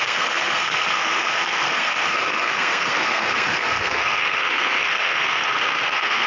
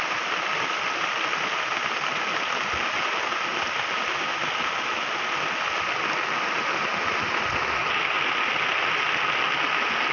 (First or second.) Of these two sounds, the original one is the second